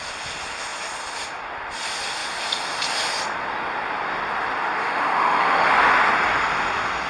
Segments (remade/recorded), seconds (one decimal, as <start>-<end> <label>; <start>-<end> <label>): 0.0-4.8 recorded; 4.8-5.7 remade; 5.7-7.1 recorded